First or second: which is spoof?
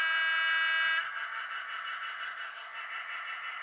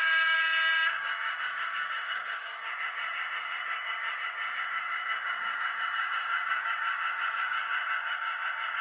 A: second